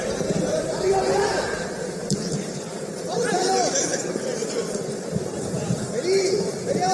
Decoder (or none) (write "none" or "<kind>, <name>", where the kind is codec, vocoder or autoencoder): vocoder, BigVGAN v2